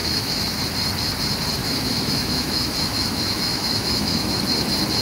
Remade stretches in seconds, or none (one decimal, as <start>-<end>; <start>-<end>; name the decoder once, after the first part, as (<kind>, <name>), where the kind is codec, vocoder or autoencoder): 0.0-0.6 (autoencoder, DAC-VAE); 1.6-4.4